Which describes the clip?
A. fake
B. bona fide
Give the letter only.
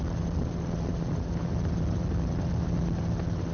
B